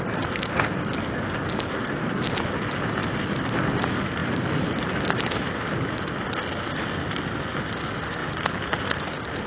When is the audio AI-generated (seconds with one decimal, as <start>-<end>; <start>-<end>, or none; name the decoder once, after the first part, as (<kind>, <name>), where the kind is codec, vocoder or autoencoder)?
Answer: none